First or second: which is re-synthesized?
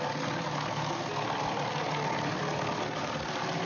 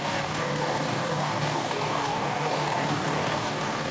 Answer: second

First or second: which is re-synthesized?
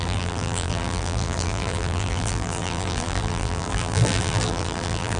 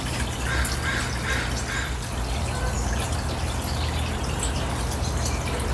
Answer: first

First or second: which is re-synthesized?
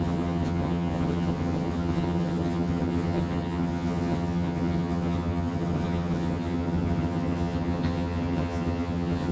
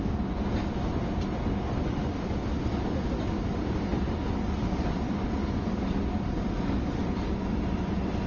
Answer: first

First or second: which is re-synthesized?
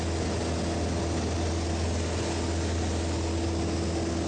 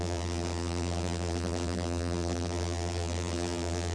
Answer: second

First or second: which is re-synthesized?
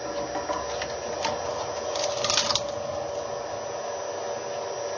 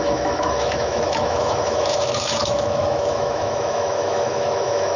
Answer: second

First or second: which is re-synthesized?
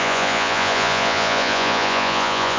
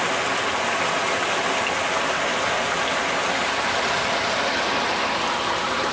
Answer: first